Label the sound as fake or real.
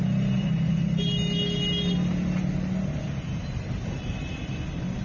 real